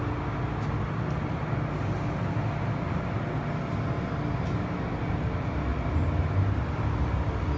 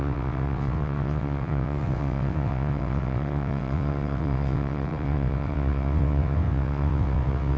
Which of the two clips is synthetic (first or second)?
second